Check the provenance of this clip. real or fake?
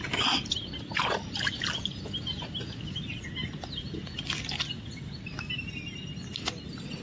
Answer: real